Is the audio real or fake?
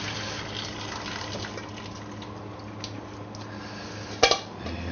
real